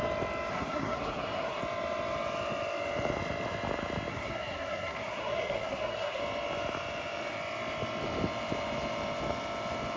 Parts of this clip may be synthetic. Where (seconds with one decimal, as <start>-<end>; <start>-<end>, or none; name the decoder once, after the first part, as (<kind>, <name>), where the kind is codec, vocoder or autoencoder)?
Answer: 0.5-1.6 (codec, SNAC); 4.1-6.2